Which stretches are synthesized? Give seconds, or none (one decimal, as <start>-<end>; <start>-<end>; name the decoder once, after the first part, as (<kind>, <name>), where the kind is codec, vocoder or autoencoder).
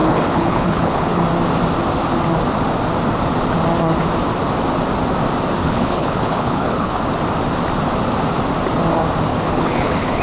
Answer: 0.0-1.2 (codec, HILCodec); 5.6-7.0; 9.3-10.2